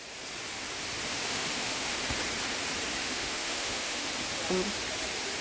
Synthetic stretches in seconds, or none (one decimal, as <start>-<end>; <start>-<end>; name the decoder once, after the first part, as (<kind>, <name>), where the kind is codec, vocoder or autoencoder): 1.1-2.0 (autoencoder, DAC-VAE); 3.0-4.1